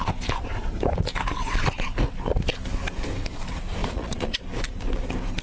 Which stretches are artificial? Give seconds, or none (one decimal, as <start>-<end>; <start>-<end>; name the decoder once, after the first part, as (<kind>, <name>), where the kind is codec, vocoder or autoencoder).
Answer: 3.8-4.4 (vocoder, Vocos)